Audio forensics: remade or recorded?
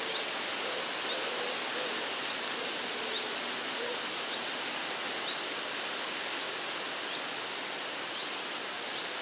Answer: recorded